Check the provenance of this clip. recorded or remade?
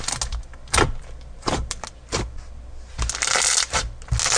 recorded